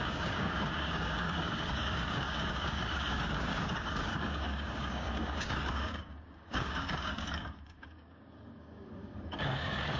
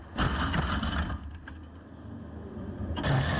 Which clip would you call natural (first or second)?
second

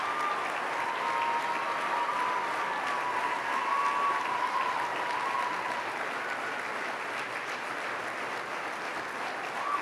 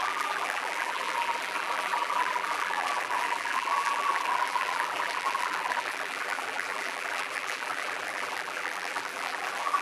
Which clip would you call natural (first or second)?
first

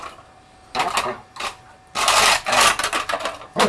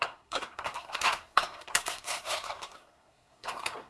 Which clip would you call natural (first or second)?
first